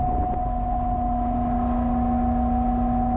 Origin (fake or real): real